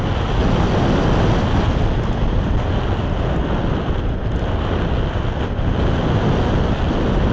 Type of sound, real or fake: real